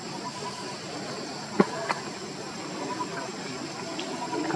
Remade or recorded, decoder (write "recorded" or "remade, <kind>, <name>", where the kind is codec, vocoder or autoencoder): recorded